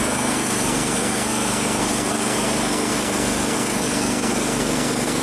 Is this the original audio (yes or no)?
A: no